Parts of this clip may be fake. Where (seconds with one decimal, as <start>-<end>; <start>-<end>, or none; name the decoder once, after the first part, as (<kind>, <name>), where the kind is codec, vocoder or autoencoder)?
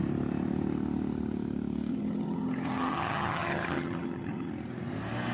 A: 1.9-4.5 (vocoder, HiFi-GAN)